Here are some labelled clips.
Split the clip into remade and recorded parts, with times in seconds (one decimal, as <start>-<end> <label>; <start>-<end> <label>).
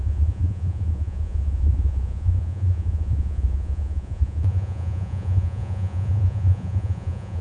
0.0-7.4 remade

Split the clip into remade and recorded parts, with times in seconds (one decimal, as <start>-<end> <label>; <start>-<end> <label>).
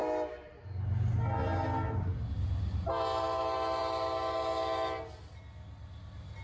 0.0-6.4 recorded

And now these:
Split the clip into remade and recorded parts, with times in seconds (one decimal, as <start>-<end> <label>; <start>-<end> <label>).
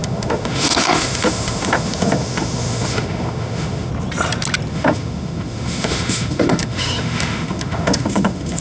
0.0-3.9 remade; 3.9-4.7 recorded; 4.7-8.6 remade